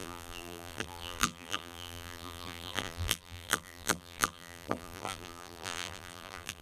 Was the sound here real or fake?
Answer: fake